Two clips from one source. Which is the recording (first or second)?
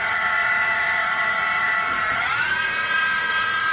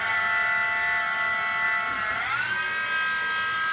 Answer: second